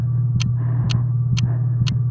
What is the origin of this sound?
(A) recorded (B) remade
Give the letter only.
A